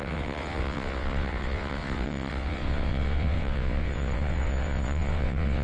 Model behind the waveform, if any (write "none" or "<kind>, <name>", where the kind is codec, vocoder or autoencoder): vocoder, WaveNeXt